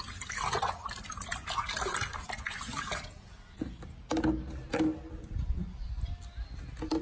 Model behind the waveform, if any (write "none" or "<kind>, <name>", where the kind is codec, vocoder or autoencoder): none